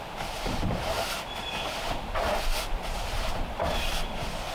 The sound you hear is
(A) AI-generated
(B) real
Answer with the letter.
A